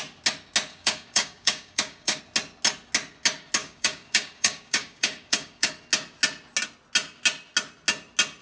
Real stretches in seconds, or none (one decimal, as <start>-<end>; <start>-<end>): 0.0-0.7; 2.2-3.6; 5.7-8.4